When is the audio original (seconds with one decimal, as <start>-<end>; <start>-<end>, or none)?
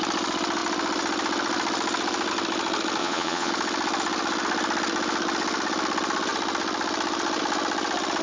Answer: 0.0-3.0; 3.5-8.2